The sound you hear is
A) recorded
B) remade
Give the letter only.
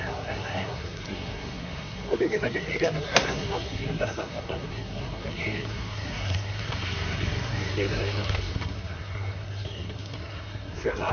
B